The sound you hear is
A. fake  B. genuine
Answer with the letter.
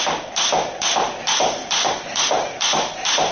B